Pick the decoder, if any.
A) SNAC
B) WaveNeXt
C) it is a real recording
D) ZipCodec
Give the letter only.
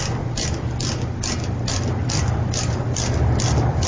C